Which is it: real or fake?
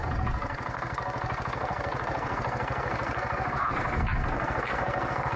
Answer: fake